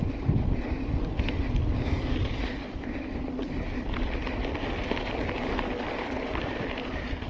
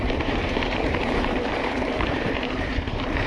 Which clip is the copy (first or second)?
second